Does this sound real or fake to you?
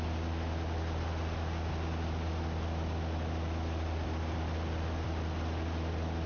real